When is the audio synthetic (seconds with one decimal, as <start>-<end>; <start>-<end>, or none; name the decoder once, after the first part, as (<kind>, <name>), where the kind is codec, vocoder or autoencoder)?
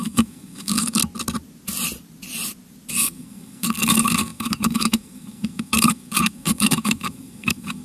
0.0-1.0 (codec, SNAC); 2.9-7.8